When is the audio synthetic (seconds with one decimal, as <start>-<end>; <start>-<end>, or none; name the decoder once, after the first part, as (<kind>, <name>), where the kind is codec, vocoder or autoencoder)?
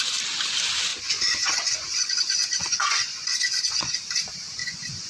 0.9-4.0 (vocoder, Vocos); 4.6-5.1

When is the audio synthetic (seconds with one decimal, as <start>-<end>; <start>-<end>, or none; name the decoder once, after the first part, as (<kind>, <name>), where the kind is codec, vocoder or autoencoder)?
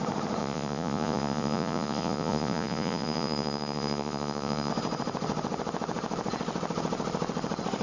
0.4-4.7 (vocoder, Vocos)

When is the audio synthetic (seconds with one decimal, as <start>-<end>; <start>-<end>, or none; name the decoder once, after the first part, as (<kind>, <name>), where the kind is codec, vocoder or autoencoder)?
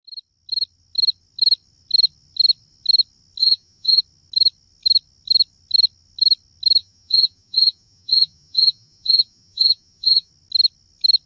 3.4-4.0 (vocoder, Vocos); 6.8-10.3